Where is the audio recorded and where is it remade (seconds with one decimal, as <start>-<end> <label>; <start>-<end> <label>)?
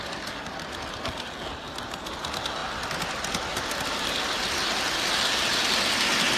0.0-6.4 recorded